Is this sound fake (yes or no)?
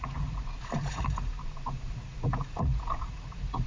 yes